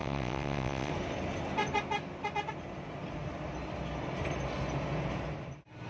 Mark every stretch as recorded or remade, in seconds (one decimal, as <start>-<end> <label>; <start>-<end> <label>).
0.0-0.9 remade; 0.9-5.9 recorded